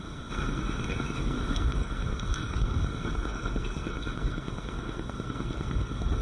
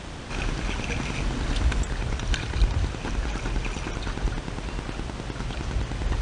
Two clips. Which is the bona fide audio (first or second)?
second